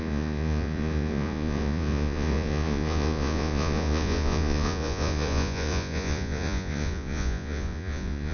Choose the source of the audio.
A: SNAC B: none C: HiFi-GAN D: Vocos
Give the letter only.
D